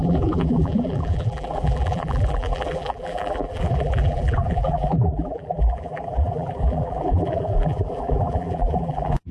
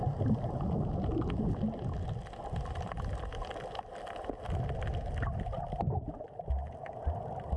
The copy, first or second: first